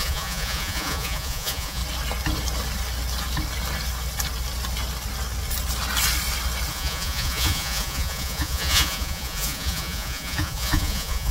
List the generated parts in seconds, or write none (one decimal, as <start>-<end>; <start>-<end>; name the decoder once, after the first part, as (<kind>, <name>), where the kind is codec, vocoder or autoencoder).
0.0-1.8 (vocoder, Vocos); 6.7-11.3